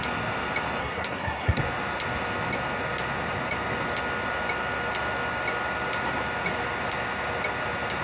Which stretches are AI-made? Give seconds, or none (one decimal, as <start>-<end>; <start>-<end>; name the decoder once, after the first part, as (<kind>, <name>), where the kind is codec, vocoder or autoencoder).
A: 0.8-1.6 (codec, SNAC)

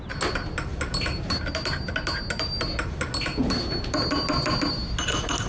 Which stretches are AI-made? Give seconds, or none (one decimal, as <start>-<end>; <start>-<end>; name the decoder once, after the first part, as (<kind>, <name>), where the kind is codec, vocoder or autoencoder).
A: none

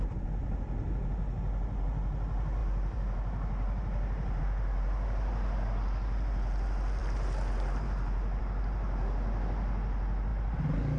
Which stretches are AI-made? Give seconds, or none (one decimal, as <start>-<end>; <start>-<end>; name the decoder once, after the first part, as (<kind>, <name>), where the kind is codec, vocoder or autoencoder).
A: none

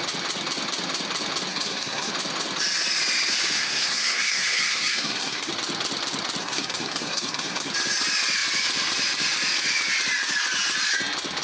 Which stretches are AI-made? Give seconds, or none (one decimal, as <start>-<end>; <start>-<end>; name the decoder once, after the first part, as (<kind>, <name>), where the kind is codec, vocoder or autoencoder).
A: 1.5-2.1 (codec, SNAC); 3.6-5.5; 6.4-7.7

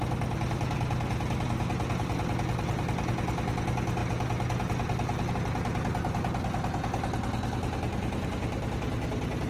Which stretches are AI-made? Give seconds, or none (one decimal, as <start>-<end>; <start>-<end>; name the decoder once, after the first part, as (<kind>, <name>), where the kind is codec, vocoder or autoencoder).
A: none

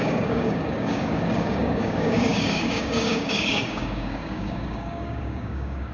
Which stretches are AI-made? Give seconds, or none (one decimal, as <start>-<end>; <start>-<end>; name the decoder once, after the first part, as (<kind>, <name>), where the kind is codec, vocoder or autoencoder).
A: 0.0-5.9 (codec, DAC)